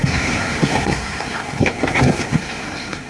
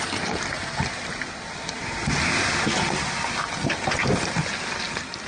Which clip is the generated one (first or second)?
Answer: first